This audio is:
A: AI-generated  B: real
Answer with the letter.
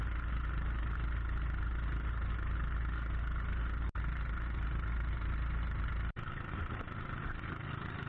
B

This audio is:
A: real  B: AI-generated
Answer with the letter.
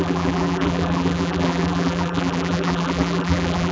B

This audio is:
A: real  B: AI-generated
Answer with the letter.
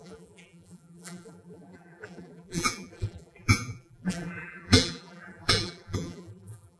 B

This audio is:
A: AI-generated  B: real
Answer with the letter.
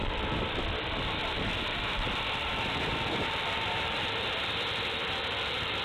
A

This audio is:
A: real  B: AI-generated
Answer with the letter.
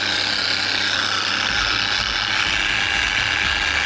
A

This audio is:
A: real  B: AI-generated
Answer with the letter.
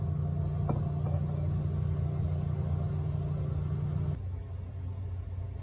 A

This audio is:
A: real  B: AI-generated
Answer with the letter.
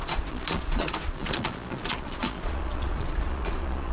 B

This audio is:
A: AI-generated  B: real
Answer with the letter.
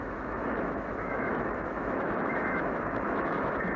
A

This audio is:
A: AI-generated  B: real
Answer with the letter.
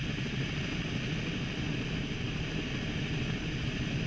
B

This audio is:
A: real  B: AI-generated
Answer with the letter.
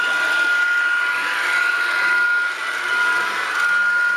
A